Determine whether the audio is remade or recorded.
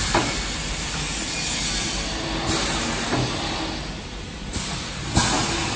recorded